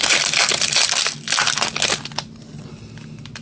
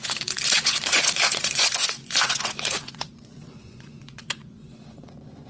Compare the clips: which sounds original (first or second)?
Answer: first